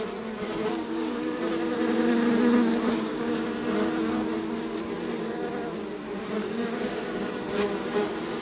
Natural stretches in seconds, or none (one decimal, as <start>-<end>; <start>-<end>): 0.0-0.6; 1.4-2.7; 3.3-6.4; 7.3-8.4